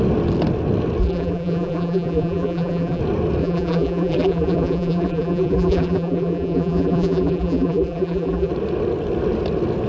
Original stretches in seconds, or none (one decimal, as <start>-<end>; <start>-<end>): 0.0-1.0; 3.0-3.4; 8.5-9.9